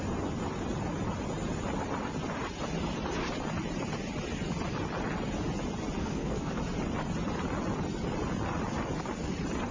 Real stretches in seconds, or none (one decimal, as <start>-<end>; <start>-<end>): 0.0-6.0; 6.6-9.7